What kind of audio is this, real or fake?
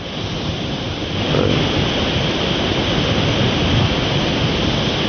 real